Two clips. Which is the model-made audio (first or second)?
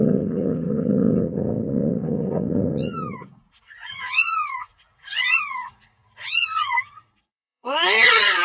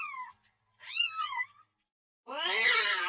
first